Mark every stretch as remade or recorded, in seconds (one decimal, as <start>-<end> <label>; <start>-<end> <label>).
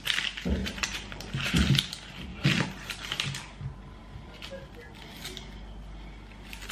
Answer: 0.0-0.6 recorded; 0.6-1.7 remade; 1.7-2.3 recorded; 2.3-3.1 remade; 3.1-6.7 recorded